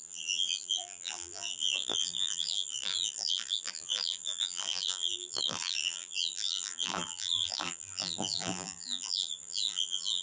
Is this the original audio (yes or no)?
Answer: no